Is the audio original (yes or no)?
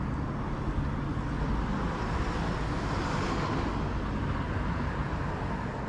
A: yes